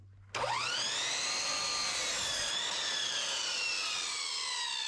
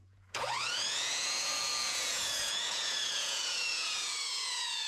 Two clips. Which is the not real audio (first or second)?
second